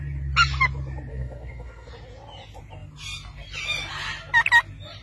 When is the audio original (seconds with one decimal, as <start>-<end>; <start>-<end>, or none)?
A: 0.0-1.1; 1.9-5.0